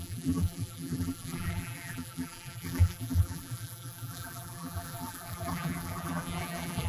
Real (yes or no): no